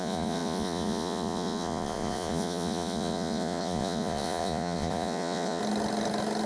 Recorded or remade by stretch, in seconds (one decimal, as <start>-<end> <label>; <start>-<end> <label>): 0.0-5.6 remade; 5.6-6.5 recorded

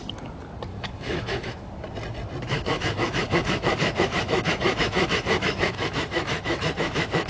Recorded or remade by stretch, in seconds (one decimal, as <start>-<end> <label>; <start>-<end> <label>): 0.0-0.7 recorded; 0.7-1.7 remade; 1.7-2.5 recorded; 2.5-7.3 remade

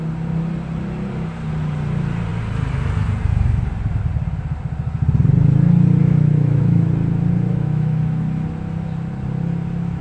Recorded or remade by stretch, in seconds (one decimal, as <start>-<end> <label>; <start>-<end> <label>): 0.0-6.0 recorded; 6.0-6.9 remade; 6.9-7.5 recorded; 7.5-8.2 remade; 8.2-10.0 recorded

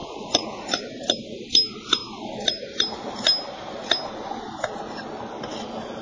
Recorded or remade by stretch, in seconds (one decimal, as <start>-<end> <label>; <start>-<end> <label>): 0.0-0.8 remade; 0.8-6.0 recorded

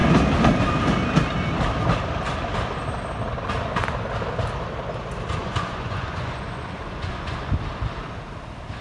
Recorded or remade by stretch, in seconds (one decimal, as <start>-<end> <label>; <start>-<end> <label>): 0.0-5.4 recorded; 5.4-7.6 remade; 7.6-8.8 recorded

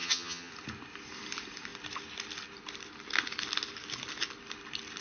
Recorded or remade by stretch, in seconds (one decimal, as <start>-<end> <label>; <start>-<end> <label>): 0.0-0.5 remade; 0.5-5.0 recorded